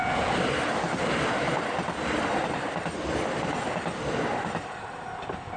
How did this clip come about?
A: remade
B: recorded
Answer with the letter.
B